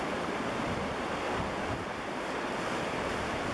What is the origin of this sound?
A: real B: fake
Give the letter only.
A